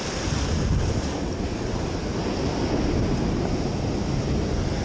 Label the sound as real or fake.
real